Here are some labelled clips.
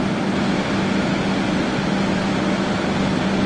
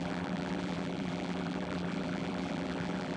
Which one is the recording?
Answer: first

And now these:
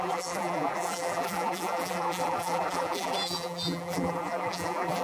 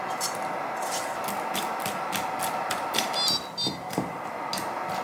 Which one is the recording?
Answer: second